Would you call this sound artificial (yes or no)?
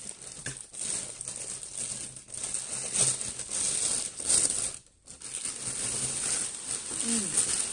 no